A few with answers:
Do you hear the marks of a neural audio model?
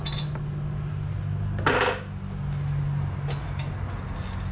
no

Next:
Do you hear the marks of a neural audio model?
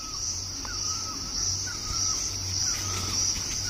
yes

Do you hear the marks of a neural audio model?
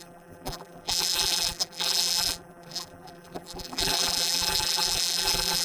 yes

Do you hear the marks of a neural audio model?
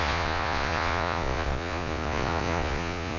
yes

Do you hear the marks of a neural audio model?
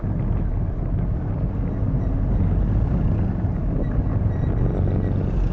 no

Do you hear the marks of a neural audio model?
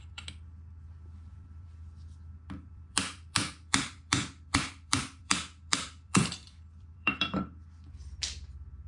yes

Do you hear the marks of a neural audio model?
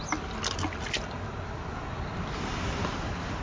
no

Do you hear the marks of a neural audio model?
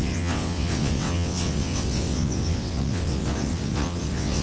yes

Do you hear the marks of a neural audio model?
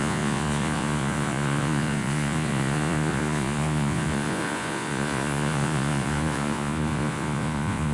yes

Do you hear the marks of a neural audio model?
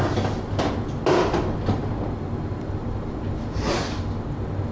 no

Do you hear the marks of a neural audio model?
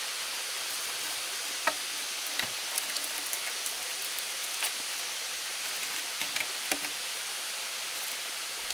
no